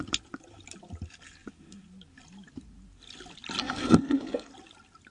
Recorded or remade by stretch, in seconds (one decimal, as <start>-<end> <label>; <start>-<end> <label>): 0.0-3.6 recorded; 3.6-4.5 remade; 4.5-5.1 recorded